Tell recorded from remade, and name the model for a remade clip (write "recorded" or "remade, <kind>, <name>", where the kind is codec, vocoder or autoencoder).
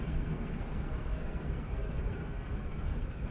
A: remade, codec, SNAC